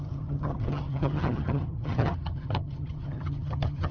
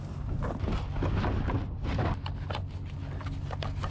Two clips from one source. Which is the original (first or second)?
second